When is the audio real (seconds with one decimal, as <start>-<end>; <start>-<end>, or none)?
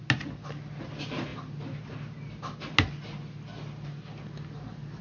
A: 0.0-5.0